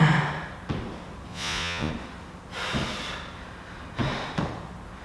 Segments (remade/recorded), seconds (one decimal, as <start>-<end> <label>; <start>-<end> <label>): 0.0-1.3 recorded; 1.3-1.9 remade; 1.9-5.0 recorded